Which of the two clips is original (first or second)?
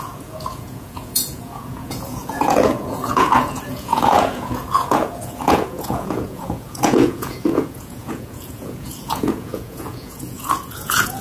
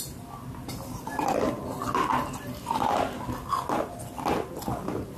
second